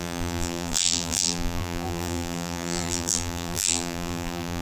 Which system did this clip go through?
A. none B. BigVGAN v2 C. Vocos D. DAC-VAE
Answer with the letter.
B